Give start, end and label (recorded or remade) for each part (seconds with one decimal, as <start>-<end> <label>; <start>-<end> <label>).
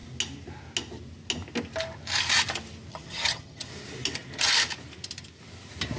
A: 0.0-2.9 recorded; 2.9-3.7 remade; 3.7-6.0 recorded